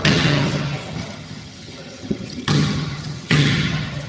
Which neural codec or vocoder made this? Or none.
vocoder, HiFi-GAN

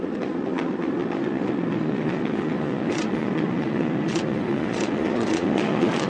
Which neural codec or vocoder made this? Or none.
vocoder, Vocos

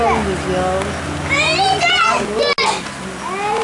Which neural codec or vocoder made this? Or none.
none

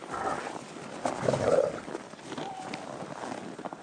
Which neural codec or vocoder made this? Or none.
none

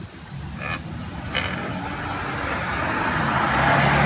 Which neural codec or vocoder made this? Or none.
none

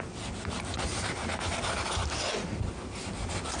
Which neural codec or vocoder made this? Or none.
none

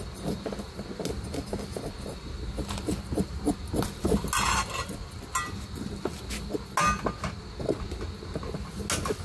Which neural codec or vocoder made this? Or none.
none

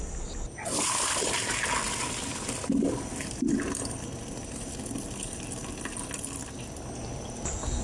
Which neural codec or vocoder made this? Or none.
none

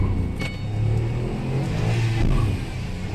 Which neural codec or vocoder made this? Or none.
none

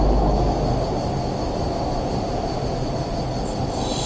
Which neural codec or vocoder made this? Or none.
none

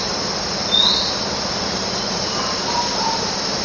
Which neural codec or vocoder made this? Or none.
none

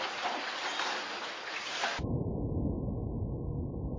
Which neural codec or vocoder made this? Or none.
none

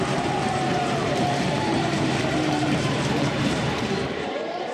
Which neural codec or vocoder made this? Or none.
vocoder, BigVGAN v2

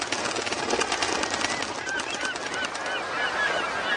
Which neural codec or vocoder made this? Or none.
none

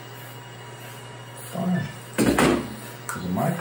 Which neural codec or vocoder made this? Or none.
none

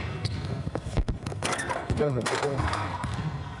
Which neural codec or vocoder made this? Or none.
codec, SNAC